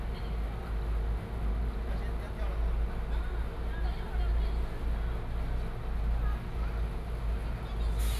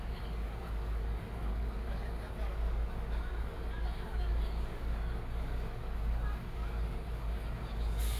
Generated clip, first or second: second